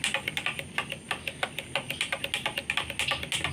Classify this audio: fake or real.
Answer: real